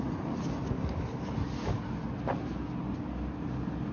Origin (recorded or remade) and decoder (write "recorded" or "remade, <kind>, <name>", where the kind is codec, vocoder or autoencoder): recorded